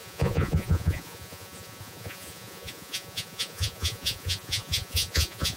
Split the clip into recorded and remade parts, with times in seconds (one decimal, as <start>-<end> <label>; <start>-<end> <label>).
0.0-5.6 remade